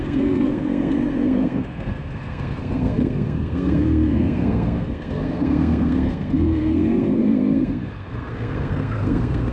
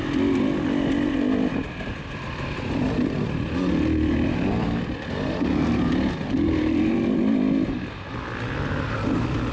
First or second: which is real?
second